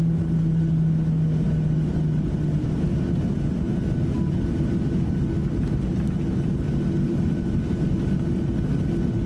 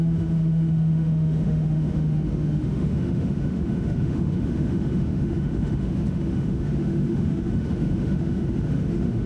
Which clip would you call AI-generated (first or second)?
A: second